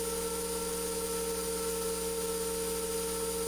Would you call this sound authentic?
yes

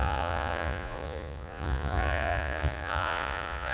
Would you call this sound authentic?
no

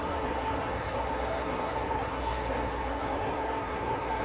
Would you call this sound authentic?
no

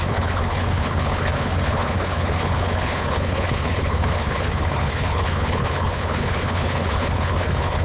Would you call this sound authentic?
no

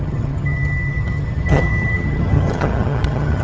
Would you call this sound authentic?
no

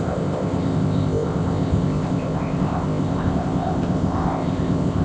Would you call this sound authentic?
no